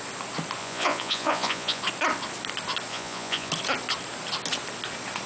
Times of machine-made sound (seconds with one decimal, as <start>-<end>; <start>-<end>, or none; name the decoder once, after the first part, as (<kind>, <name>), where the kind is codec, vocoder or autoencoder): 0.6-1.8 (vocoder, Vocos); 2.9-3.5